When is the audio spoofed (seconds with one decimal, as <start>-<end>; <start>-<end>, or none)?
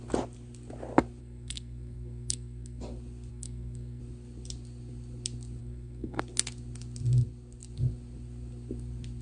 1.2-2.8; 3.3-4.0; 5.6-6.2